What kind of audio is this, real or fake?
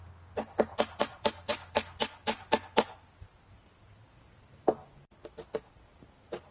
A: real